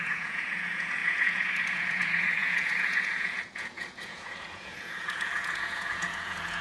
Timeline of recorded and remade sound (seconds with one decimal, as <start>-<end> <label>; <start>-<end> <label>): 0.0-6.6 remade